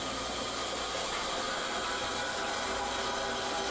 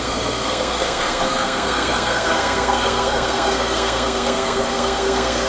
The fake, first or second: second